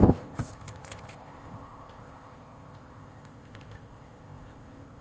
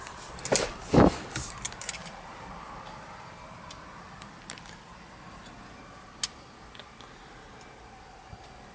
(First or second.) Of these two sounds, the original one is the second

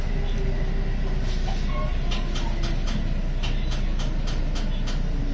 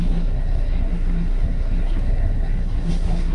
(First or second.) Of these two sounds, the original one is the first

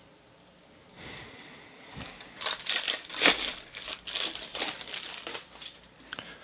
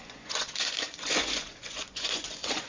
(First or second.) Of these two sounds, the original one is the first